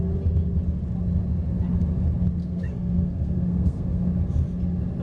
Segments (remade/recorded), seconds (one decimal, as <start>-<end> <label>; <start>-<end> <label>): 0.0-2.4 recorded; 2.4-4.0 remade; 4.0-5.0 recorded